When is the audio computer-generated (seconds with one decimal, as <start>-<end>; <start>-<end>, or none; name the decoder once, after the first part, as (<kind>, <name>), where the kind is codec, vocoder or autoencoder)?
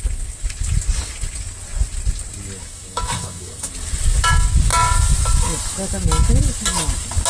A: 2.6-3.7 (autoencoder, DAC-VAE)